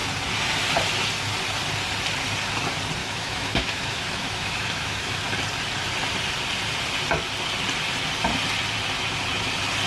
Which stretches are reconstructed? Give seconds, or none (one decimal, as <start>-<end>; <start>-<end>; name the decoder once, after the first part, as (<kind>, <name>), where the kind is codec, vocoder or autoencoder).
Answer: 3.0-5.2 (autoencoder, DAC-VAE)